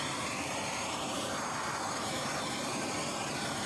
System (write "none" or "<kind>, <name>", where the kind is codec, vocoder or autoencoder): vocoder, BigVGAN v2